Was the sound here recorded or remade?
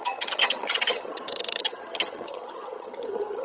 remade